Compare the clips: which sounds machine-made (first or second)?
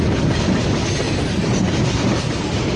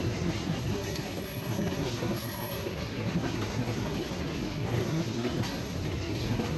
second